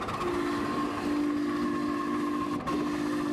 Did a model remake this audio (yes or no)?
no